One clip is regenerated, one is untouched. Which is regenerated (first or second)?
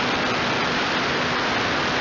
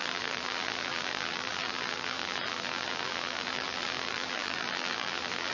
second